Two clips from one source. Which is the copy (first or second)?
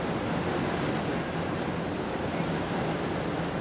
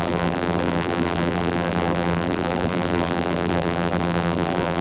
second